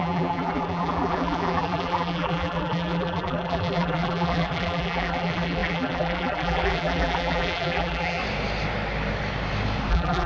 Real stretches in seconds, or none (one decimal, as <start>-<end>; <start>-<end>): 8.2-9.9